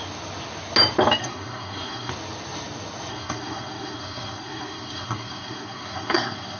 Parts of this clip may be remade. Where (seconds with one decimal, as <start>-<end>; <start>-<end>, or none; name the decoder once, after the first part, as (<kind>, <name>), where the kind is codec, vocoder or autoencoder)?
1.2-2.1 (codec, SNAC); 3.1-6.6